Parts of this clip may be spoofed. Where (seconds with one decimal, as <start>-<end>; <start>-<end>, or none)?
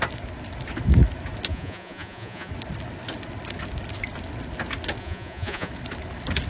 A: 1.5-2.5; 5.0-5.7